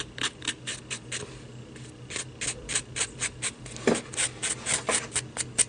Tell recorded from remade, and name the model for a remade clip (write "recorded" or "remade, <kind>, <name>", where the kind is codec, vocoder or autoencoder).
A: recorded